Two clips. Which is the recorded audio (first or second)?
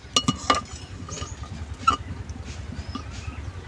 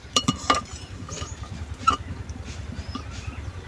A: first